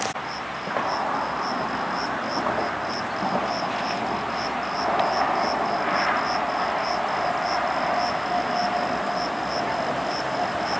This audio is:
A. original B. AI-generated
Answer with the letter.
A